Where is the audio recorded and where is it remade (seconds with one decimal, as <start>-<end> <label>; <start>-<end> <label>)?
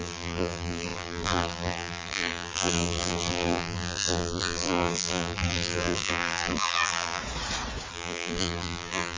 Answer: 0.0-7.2 remade; 7.2-7.9 recorded; 7.9-9.2 remade